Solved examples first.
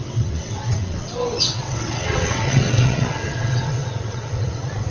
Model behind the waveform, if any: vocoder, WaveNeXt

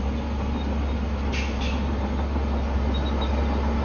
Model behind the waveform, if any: none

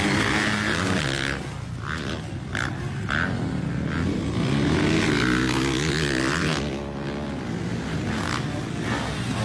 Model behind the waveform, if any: none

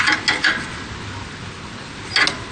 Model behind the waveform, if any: none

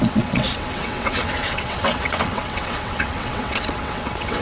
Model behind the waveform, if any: vocoder, WaveNeXt